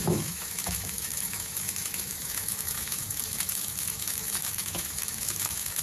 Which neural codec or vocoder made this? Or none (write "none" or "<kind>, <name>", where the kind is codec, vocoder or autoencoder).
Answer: autoencoder, DAC-VAE